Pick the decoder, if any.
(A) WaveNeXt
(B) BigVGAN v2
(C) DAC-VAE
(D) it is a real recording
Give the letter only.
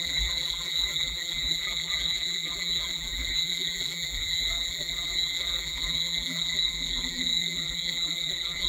B